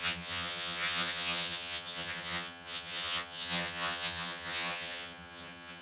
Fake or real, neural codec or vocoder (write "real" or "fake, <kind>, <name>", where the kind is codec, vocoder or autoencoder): fake, vocoder, HiFi-GAN